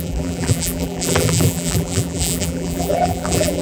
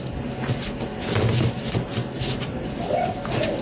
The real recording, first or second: second